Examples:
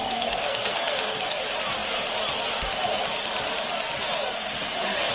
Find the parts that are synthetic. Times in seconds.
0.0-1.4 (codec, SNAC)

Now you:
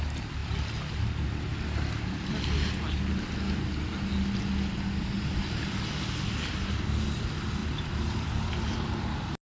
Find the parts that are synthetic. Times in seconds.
none